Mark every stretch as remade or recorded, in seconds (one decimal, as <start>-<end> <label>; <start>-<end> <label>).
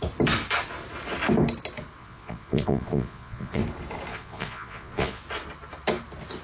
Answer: 0.0-2.0 recorded; 2.0-3.6 remade; 3.6-4.1 recorded; 4.1-5.2 remade; 5.2-6.4 recorded